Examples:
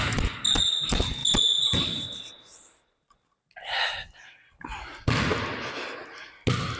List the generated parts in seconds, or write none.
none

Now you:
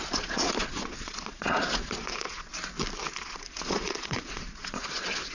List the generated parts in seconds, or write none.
0.0-2.5 (vocoder, Vocos); 3.2-5.3

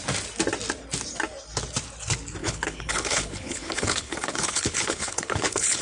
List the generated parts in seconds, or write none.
2.4-5.8 (codec, HILCodec)

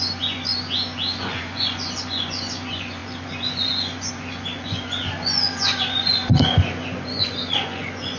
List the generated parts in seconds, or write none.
0.0-8.2 (vocoder, Vocos)